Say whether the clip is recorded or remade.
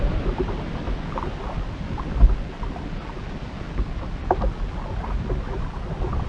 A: recorded